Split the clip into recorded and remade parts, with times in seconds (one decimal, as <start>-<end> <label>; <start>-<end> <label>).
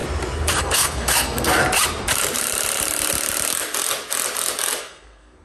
0.0-0.6 recorded; 0.6-1.6 remade; 1.6-4.8 recorded; 4.8-5.4 remade